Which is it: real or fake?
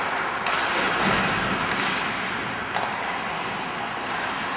real